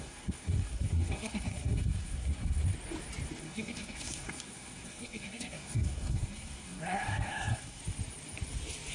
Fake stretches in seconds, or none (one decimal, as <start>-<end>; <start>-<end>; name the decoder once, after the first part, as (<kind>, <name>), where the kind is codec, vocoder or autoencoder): 0.0-2.6 (codec, SNAC); 3.4-7.8